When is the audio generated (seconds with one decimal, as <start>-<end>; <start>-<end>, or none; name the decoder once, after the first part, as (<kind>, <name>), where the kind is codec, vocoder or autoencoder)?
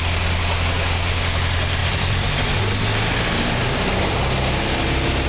1.8-2.6 (vocoder, BigVGAN v2); 3.6-4.5